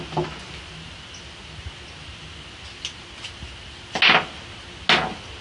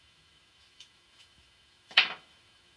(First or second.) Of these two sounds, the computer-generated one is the second